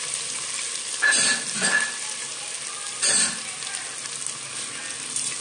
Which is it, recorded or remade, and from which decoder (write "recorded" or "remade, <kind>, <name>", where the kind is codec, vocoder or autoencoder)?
recorded